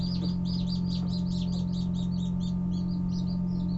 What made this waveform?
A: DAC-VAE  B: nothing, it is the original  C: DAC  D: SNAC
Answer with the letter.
B